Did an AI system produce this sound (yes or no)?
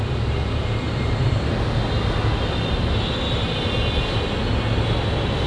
no